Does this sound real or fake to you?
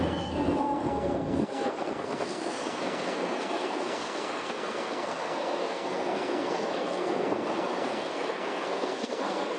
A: fake